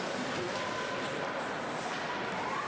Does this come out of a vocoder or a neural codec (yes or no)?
no